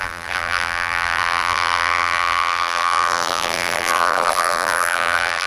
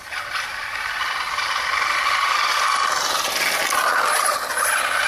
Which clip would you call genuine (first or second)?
second